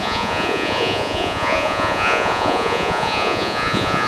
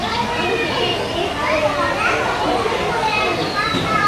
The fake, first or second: first